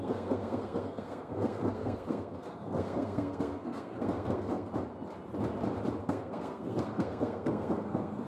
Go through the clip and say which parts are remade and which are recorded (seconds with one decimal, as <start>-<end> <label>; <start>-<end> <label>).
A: 0.0-4.7 remade; 4.7-6.0 recorded; 6.0-8.3 remade